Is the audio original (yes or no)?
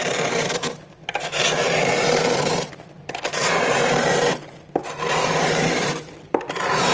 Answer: no